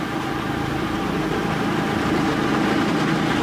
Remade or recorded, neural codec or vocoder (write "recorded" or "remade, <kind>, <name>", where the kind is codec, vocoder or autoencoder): remade, vocoder, BigVGAN v2